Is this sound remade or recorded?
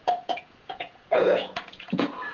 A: remade